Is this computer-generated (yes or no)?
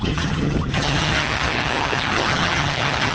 yes